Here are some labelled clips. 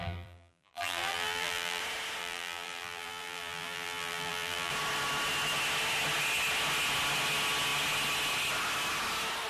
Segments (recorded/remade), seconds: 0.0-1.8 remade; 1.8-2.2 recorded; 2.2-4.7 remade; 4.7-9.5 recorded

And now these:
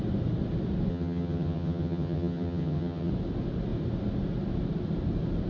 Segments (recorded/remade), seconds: 0.0-0.9 recorded; 0.9-3.1 remade; 3.1-5.5 recorded

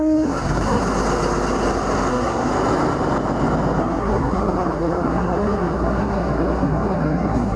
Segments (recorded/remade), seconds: 0.0-0.8 remade; 0.8-2.1 recorded; 2.1-2.5 remade; 2.5-3.8 recorded; 3.8-7.6 remade